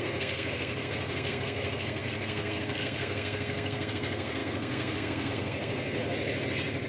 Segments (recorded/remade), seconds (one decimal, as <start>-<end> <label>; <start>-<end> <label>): 0.0-6.0 remade; 6.0-6.9 recorded